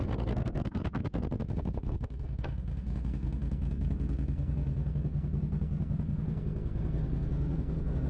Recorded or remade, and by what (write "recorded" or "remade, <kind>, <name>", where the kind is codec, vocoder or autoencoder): remade, codec, SNAC